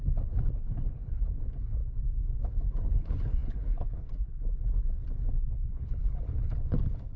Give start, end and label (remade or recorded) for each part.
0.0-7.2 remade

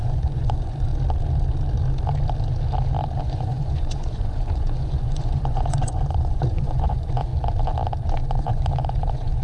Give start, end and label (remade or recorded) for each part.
0.0-0.9 remade; 0.9-3.2 recorded; 3.2-7.3 remade; 7.3-8.3 recorded; 8.3-9.4 remade

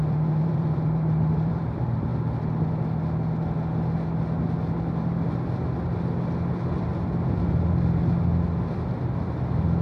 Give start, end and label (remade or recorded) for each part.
0.0-2.1 remade; 2.1-6.5 recorded; 6.5-6.9 remade; 6.9-8.6 recorded; 8.6-9.8 remade

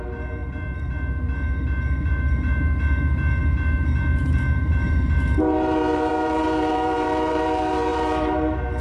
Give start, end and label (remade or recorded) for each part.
0.0-8.8 remade

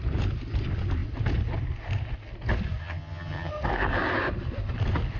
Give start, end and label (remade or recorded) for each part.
0.0-2.8 recorded; 2.8-3.5 remade; 3.5-5.2 recorded

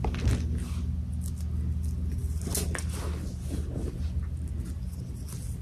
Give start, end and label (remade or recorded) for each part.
0.0-5.6 recorded

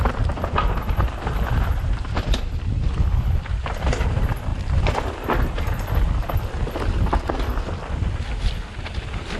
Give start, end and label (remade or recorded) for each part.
0.0-9.4 recorded